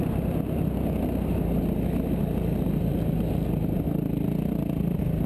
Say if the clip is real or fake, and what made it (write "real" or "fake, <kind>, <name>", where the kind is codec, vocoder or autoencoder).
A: real